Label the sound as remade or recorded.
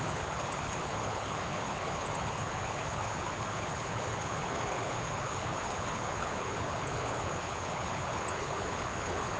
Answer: remade